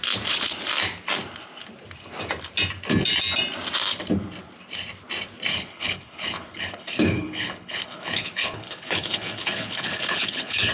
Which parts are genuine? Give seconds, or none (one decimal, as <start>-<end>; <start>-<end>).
0.0-5.5